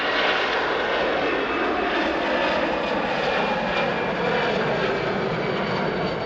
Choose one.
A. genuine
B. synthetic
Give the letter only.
A